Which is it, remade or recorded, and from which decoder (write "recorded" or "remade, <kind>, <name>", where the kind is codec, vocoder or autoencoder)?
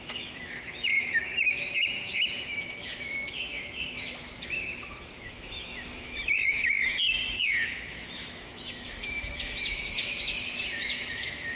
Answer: remade, autoencoder, DAC-VAE